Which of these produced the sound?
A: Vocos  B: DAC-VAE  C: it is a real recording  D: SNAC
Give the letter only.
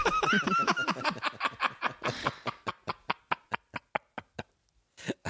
C